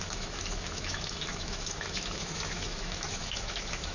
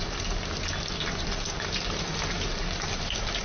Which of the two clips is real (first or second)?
second